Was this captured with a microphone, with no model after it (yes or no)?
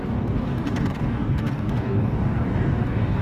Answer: no